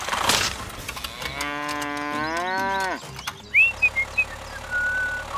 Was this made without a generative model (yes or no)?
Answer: yes